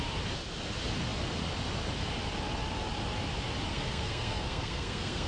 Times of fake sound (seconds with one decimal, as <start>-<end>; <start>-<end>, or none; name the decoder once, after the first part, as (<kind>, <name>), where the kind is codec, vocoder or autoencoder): 3.7-5.3 (codec, SNAC)